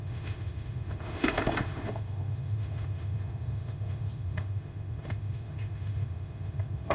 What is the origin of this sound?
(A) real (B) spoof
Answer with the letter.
B